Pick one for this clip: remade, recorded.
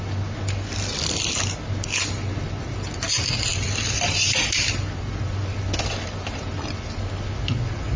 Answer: recorded